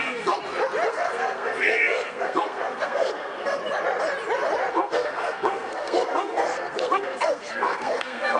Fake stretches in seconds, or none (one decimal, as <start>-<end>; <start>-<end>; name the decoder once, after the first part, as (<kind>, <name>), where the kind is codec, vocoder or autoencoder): 0.0-0.4 (codec, SNAC); 0.9-3.6; 4.7-8.4